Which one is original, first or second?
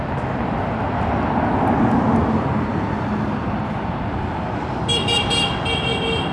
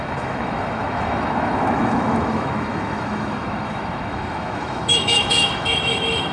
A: first